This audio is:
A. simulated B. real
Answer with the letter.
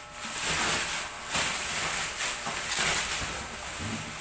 B